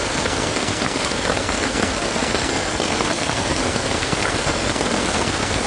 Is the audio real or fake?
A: fake